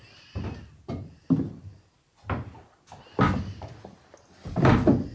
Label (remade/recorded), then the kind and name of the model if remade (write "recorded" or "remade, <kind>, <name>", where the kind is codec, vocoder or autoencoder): recorded